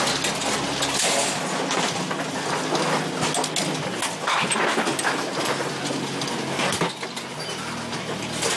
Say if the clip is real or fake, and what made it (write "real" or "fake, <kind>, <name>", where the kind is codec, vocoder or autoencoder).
real